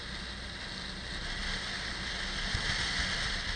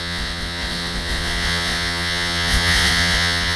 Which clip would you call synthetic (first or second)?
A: second